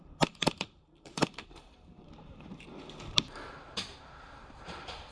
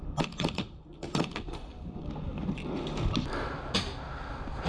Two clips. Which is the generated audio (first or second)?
first